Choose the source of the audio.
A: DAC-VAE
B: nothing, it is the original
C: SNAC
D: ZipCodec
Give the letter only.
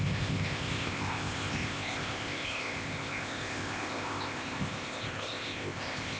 D